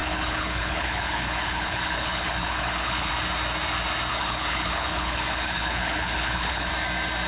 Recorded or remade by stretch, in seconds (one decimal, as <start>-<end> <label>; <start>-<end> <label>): 0.0-3.1 remade; 3.1-4.1 recorded; 4.1-6.7 remade; 6.7-7.3 recorded